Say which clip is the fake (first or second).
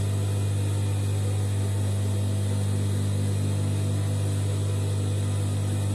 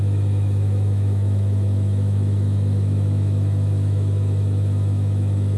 second